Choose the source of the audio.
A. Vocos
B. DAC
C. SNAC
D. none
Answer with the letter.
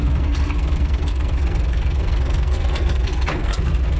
C